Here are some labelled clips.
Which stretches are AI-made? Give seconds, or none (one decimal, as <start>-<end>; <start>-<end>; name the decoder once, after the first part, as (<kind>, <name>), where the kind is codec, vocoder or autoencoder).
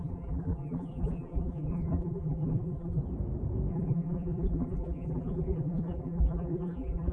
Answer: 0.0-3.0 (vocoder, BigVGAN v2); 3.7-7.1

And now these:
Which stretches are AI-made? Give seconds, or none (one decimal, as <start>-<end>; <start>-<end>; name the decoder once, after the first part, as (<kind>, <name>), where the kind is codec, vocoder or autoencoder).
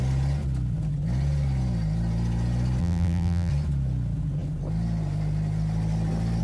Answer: 2.8-3.5 (vocoder, BigVGAN v2)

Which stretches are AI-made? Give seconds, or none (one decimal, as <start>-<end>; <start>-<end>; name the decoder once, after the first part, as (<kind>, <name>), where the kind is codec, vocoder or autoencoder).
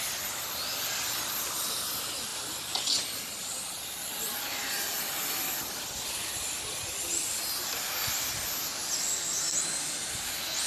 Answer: 2.3-6.9 (vocoder, BigVGAN v2)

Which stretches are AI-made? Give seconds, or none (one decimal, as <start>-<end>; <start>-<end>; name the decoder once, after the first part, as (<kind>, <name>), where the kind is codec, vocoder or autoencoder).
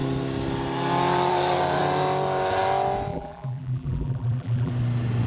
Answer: 3.1-4.7 (vocoder, BigVGAN v2)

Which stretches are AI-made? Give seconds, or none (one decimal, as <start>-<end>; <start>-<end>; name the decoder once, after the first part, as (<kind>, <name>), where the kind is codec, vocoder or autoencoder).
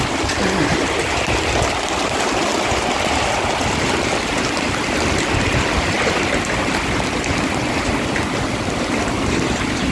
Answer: 2.5-3.1 (vocoder, BigVGAN v2)